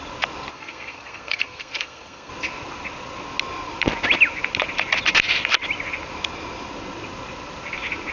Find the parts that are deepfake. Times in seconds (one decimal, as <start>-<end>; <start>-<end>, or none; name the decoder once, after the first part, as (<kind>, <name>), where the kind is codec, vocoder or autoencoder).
0.5-2.3 (codec, SNAC)